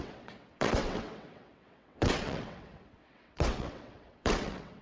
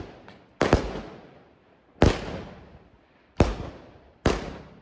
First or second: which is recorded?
second